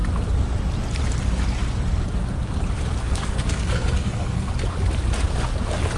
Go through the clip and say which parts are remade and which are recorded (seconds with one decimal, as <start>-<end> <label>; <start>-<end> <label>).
0.0-3.0 recorded; 3.0-4.5 remade; 4.5-6.0 recorded